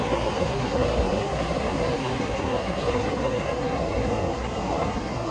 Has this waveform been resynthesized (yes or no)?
yes